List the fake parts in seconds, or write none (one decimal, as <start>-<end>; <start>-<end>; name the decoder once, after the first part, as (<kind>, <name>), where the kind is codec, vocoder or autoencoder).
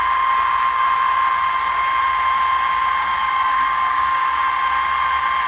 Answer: 3.2-4.4 (codec, DAC)